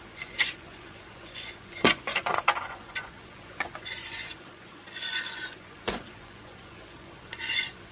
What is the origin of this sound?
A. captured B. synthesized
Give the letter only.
B